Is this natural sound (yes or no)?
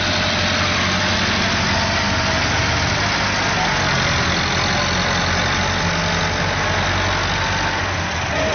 yes